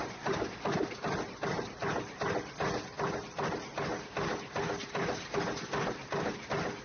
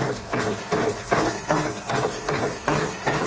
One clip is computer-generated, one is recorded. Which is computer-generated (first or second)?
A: second